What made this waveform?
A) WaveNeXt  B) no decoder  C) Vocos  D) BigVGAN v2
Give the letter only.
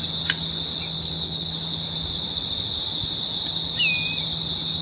B